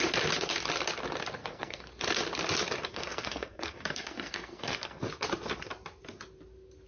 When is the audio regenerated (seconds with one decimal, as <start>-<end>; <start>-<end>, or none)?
1.4-1.9; 2.9-5.0